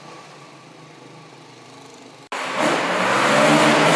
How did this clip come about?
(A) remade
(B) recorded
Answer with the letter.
B